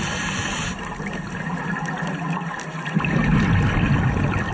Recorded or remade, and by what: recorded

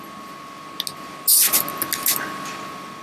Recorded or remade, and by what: recorded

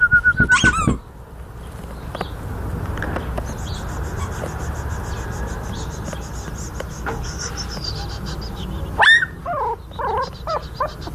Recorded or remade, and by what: recorded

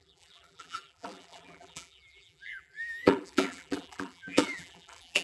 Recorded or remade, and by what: remade, vocoder, BigVGAN v2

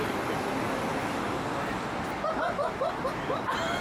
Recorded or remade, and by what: remade, vocoder, BigVGAN v2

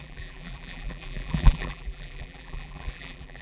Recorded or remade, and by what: remade, vocoder, BigVGAN v2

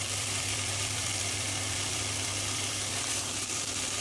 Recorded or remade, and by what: remade, vocoder, BigVGAN v2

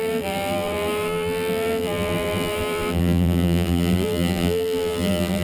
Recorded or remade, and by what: remade, vocoder, BigVGAN v2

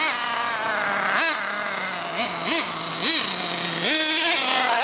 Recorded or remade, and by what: recorded